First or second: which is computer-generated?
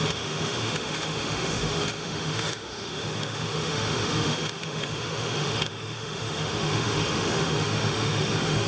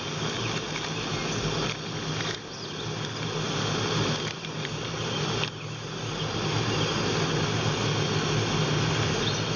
first